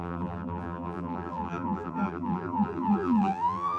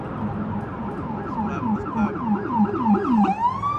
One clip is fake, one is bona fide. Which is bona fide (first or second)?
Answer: second